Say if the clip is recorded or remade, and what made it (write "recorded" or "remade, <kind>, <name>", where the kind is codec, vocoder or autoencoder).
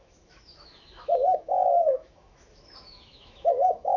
remade, autoencoder, DAC-VAE